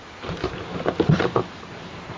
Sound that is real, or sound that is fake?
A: fake